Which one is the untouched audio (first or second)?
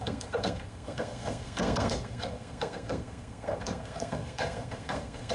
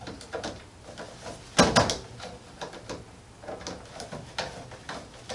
second